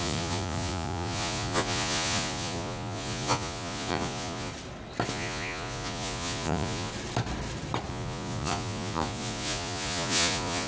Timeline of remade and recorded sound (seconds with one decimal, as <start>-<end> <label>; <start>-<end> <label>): 0.0-4.5 remade; 4.5-5.1 recorded; 5.1-6.9 remade; 6.9-7.9 recorded; 7.9-10.7 remade